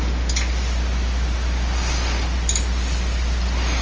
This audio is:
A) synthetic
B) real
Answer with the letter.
B